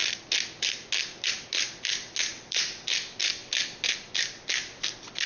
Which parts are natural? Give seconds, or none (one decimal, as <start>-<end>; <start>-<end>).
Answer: 0.0-5.3